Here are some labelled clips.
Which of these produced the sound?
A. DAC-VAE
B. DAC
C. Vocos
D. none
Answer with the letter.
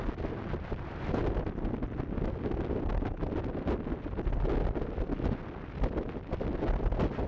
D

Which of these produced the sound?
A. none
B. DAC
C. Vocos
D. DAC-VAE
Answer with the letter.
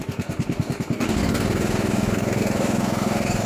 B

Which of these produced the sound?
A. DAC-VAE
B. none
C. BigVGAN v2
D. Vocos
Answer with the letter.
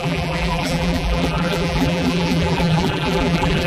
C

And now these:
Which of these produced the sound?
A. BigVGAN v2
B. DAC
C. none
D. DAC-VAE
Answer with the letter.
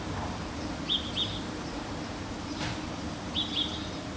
C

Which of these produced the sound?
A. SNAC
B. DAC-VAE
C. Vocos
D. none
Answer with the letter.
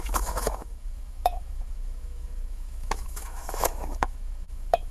B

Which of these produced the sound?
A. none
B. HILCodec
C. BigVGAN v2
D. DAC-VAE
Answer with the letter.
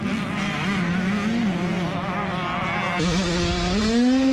A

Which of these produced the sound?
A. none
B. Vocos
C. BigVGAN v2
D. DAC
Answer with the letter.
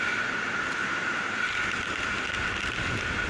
A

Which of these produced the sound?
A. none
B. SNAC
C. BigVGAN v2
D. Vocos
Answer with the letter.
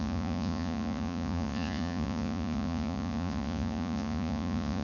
D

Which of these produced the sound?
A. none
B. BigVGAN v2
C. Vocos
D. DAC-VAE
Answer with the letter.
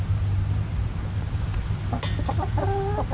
A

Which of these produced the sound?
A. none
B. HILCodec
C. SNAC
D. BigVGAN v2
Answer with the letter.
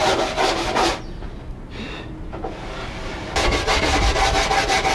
A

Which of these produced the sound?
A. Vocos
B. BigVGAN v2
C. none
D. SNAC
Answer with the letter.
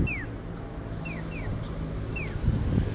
C